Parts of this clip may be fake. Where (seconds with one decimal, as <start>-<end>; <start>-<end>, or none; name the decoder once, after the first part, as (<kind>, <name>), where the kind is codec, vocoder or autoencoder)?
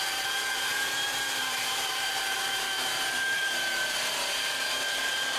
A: 0.0-5.4 (vocoder, BigVGAN v2)